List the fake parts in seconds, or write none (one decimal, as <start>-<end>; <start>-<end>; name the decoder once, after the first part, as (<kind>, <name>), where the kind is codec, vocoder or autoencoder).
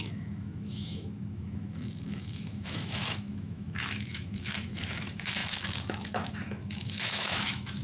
0.0-7.8 (autoencoder, DAC-VAE)